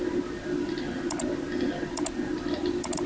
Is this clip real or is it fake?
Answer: real